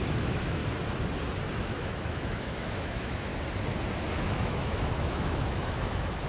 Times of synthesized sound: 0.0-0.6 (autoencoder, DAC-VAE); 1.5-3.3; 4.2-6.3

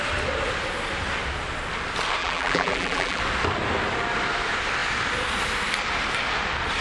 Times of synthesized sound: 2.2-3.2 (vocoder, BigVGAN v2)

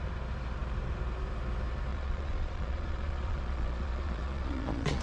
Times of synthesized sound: 1.9-5.0 (vocoder, Vocos)